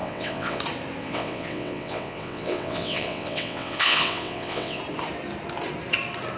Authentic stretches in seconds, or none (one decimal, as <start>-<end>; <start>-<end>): 0.6-1.0; 4.8-6.4